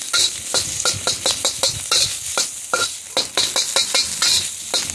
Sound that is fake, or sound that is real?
real